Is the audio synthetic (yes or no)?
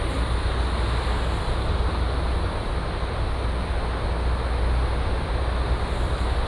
no